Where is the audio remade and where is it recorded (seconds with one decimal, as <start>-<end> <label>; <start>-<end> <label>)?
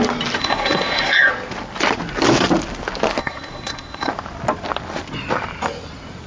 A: 0.0-0.4 recorded; 0.4-1.3 remade; 1.3-3.2 recorded; 3.2-4.1 remade; 4.1-6.3 recorded